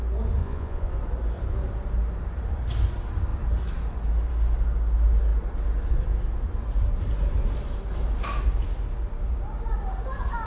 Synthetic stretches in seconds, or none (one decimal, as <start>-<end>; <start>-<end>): 0.4-0.9